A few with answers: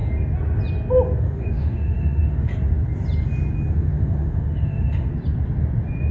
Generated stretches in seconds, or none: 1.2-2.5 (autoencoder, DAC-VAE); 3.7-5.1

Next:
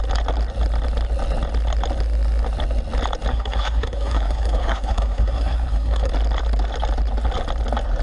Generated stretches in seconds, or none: 3.3-6.1 (codec, SNAC)

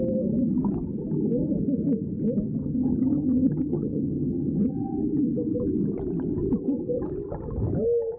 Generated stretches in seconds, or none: 2.6-4.7 (vocoder, HiFi-GAN)